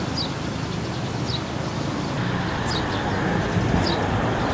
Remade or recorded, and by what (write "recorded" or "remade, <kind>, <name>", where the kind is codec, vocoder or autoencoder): recorded